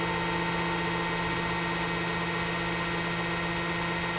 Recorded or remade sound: recorded